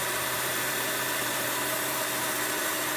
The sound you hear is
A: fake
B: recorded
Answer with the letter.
A